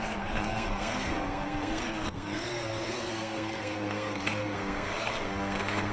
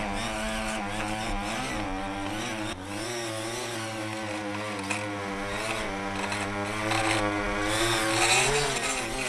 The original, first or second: second